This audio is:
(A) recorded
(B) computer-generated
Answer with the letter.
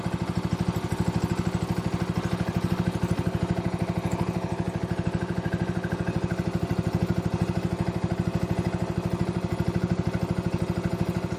A